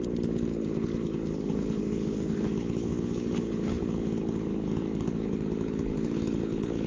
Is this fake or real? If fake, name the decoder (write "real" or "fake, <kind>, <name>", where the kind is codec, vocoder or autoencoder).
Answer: fake, codec, HILCodec